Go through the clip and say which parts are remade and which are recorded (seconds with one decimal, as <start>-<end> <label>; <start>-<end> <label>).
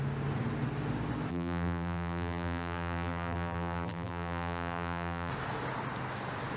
0.0-1.3 recorded; 1.3-5.3 remade; 5.3-6.6 recorded